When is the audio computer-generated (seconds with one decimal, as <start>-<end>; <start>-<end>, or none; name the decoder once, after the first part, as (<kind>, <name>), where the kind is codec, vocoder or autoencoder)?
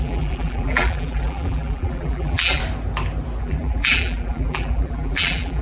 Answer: 0.0-2.6 (vocoder, BigVGAN v2); 3.4-5.6